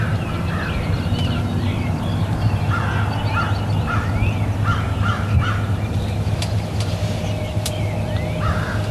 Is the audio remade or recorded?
recorded